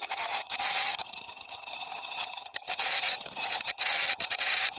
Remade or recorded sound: remade